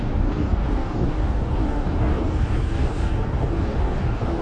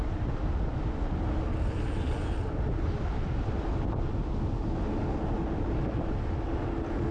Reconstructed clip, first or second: first